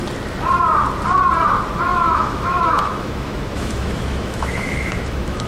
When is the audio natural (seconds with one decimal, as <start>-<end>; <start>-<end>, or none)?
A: 0.0-1.9